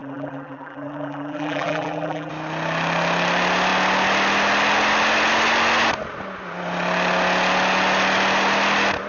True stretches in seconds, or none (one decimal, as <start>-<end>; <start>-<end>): 2.3-9.1